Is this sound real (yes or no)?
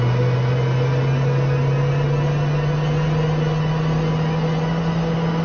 yes